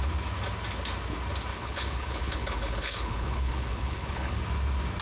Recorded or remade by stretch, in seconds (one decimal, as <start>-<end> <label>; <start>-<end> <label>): 0.0-1.5 recorded; 1.5-4.4 remade; 4.4-5.0 recorded